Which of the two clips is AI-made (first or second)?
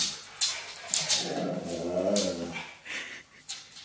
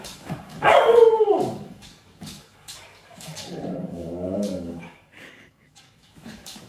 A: second